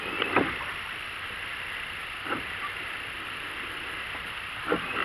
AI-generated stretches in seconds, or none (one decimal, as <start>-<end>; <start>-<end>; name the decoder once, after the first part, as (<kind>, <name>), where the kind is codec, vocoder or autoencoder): none